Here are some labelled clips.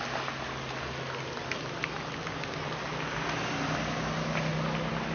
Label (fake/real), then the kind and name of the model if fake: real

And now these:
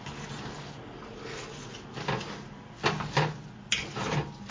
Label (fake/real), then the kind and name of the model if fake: real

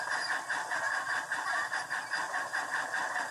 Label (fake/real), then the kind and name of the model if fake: fake, vocoder, BigVGAN v2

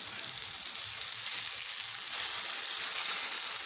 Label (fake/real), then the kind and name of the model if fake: real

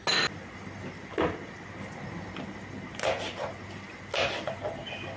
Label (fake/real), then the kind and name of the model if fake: real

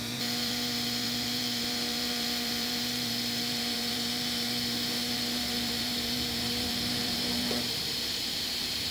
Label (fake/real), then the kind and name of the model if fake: fake, vocoder, BigVGAN v2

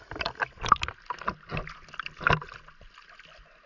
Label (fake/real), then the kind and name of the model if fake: real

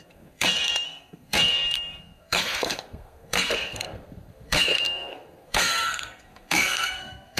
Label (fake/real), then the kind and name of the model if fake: fake, codec, SNAC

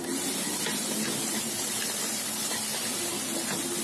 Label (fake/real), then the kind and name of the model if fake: real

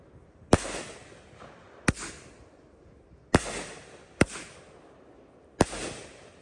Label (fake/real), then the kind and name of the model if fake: real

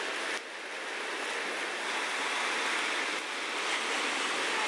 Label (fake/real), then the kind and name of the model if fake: real